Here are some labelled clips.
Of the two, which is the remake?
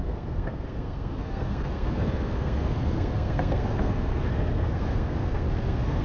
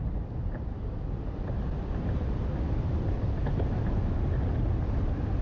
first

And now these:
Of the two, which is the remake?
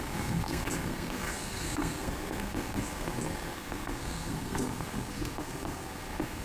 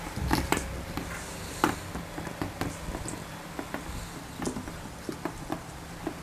first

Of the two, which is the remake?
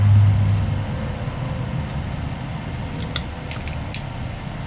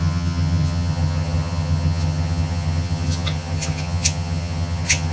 second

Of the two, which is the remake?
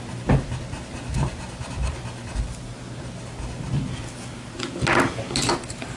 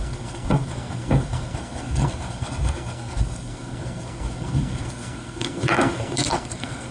second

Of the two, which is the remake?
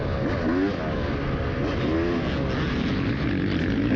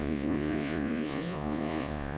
second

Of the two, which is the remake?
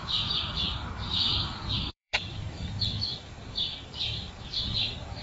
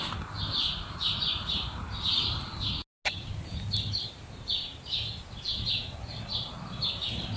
first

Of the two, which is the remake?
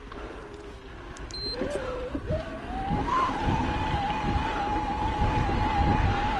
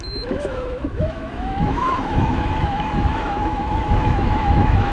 second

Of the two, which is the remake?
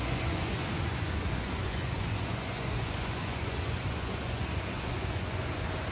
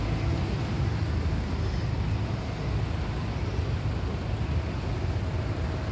first